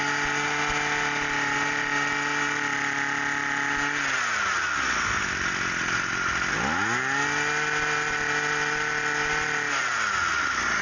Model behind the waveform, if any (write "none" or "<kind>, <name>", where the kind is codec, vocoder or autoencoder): none